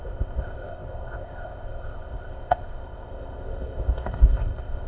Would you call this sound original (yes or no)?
no